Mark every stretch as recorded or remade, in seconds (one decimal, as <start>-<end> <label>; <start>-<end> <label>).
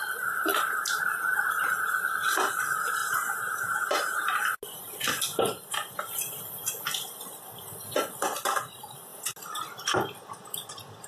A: 0.0-0.5 recorded; 0.5-1.9 remade; 1.9-3.0 recorded; 3.0-4.2 remade; 4.2-5.3 recorded; 5.3-6.3 remade; 6.3-11.1 recorded